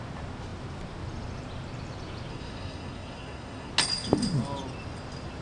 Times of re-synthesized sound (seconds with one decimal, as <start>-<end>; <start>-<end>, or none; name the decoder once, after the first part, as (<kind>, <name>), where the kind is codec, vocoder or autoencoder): 2.3-3.7 (codec, SNAC)